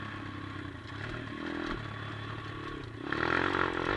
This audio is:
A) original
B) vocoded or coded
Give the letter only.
A